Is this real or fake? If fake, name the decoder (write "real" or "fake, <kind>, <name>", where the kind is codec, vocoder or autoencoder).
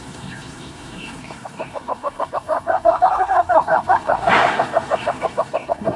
fake, codec, SNAC